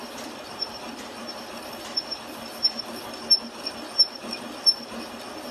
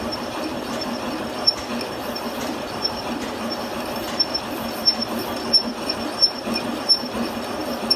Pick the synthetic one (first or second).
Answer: second